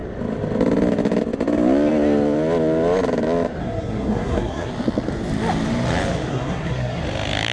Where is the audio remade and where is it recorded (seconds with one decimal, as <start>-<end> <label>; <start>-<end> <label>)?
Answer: 0.0-3.6 recorded; 3.6-4.7 remade; 4.7-6.3 recorded; 6.3-7.0 remade; 7.0-7.5 recorded